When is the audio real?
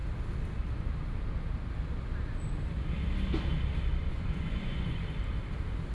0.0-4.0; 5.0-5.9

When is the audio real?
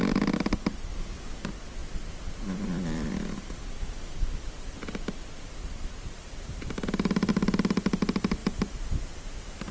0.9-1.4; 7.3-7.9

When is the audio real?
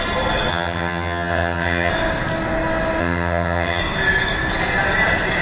0.0-0.5; 1.9-3.0; 3.8-5.4